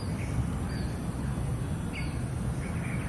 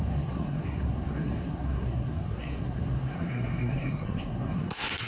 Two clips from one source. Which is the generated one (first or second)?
second